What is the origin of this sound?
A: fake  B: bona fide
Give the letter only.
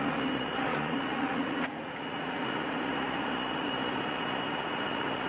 A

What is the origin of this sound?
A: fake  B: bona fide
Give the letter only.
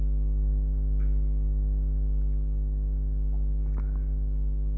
B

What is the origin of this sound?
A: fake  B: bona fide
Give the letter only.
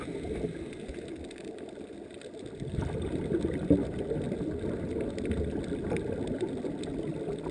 B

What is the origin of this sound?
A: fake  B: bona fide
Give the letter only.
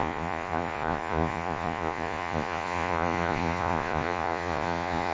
A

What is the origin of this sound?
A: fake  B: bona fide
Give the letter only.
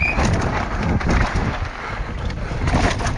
B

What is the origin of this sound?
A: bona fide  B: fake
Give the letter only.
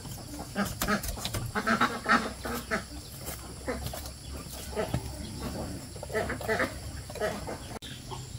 A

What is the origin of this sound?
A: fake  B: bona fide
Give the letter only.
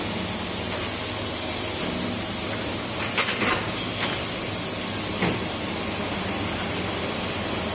B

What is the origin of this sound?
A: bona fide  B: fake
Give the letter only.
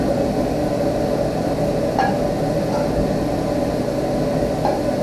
A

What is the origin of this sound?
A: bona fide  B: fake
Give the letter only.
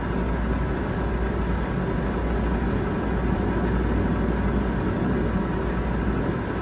A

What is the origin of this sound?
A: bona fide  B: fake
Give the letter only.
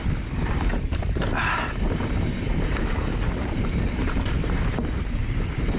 B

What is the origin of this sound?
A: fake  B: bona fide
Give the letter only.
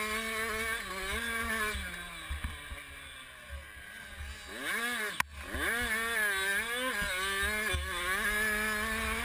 B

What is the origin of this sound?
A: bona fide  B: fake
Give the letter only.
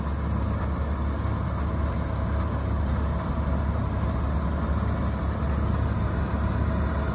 A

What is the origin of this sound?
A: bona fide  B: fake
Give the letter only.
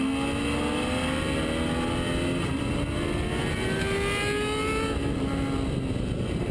A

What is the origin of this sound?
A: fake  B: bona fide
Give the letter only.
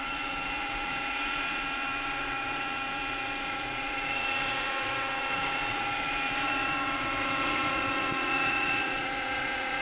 A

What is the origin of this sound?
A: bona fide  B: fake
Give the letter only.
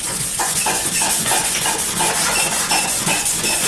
B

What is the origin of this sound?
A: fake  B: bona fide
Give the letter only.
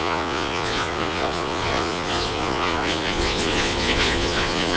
A